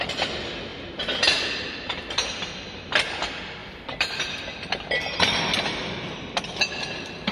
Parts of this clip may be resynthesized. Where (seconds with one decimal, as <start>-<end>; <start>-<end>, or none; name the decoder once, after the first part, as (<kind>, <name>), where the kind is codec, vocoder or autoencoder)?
3.6-4.3 (vocoder, BigVGAN v2)